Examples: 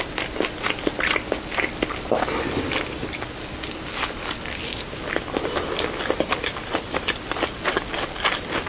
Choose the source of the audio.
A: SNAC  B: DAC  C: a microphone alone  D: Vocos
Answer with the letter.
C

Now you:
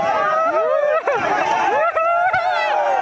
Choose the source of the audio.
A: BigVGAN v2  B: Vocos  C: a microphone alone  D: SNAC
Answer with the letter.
C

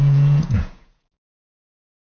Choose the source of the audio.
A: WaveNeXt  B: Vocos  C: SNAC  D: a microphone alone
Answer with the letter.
B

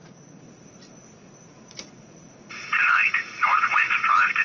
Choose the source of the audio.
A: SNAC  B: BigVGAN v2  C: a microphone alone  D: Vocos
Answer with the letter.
D